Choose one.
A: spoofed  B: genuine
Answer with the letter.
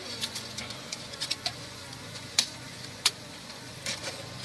A